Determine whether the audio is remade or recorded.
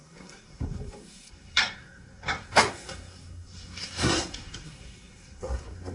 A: remade